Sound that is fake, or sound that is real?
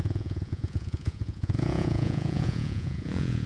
fake